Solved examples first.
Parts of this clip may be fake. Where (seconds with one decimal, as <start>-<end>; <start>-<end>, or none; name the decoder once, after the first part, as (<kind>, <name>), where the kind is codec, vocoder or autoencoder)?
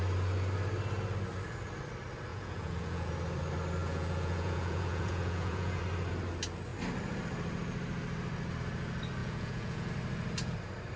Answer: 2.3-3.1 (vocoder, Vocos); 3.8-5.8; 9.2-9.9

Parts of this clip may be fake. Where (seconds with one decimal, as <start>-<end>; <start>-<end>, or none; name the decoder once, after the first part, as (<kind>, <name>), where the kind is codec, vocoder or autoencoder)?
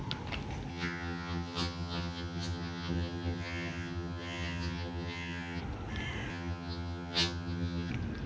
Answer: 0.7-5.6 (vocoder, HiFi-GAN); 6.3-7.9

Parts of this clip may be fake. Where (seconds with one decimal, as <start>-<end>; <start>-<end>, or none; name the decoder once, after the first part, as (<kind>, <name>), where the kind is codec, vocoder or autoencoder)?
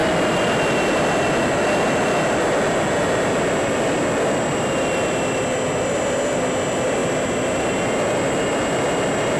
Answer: none